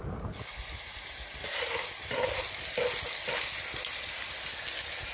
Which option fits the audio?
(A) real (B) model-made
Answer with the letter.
A